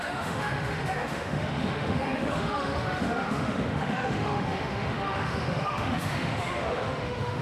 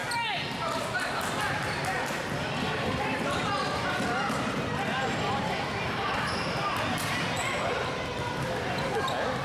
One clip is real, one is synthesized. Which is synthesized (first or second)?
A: first